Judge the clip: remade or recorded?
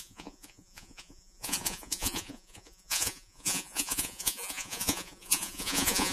remade